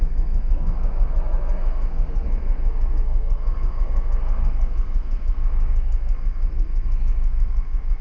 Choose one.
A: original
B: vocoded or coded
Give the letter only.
B